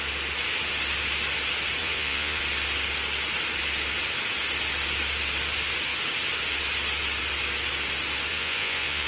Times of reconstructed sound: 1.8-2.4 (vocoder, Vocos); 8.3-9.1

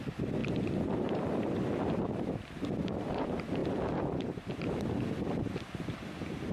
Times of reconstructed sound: 0.4-2.9 (vocoder, BigVGAN v2)

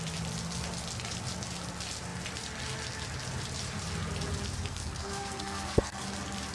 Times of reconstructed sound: 4.7-6.0 (codec, SNAC)